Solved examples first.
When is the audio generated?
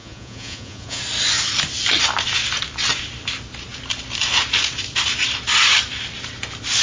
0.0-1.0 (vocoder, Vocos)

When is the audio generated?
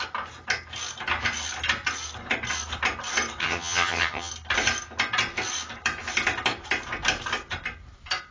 3.4-4.3 (vocoder, HiFi-GAN)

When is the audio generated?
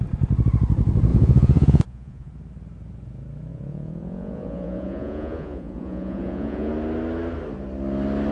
1.1-2.3 (vocoder, Vocos); 3.5-6.7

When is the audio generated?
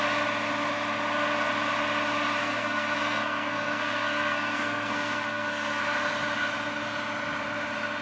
2.4-5.8 (codec, SNAC)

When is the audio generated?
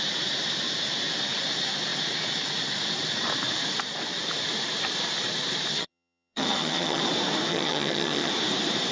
5.7-7.0 (vocoder, HiFi-GAN); 7.5-8.3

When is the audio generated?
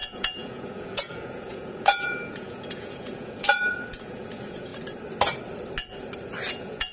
0.0-4.7 (vocoder, Vocos); 6.5-6.9